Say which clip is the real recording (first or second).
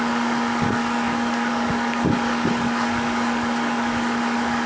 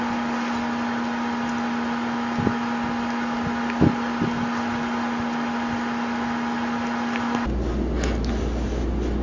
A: second